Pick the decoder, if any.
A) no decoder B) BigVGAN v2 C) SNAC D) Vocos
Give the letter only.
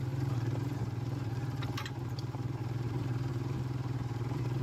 B